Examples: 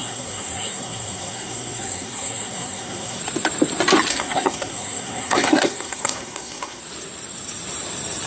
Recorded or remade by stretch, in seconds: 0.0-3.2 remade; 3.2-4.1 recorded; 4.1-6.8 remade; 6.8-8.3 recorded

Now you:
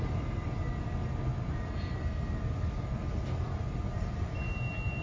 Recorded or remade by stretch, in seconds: 0.0-5.0 recorded

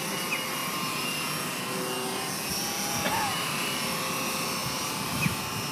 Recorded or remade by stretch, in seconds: 0.0-3.3 recorded; 3.3-4.0 remade; 4.0-5.7 recorded

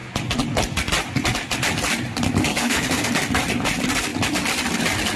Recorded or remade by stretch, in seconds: 0.0-2.5 recorded; 2.5-3.1 remade; 3.1-5.2 recorded

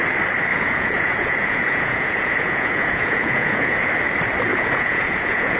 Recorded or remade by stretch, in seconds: 0.0-0.5 recorded; 0.5-3.9 remade; 3.9-4.5 recorded; 4.5-5.6 remade